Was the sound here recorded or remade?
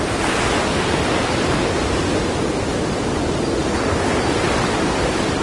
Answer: remade